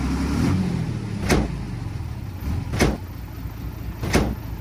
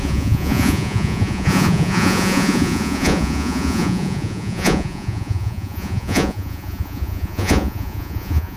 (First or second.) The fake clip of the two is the second